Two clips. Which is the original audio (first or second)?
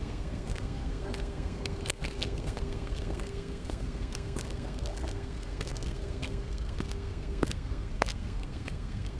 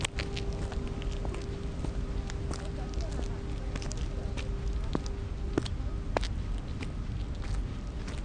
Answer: second